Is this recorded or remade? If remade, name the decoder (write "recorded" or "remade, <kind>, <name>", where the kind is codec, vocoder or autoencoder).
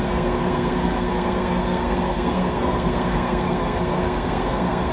remade, codec, SNAC